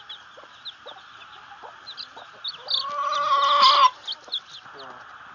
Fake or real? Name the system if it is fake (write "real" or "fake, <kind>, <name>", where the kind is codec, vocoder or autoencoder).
real